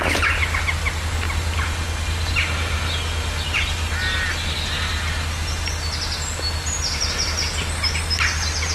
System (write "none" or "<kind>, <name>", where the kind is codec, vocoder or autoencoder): none